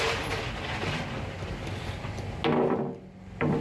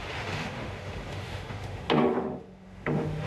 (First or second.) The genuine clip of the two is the first